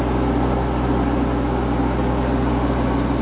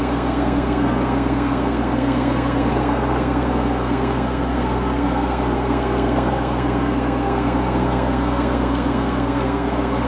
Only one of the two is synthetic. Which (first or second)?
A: second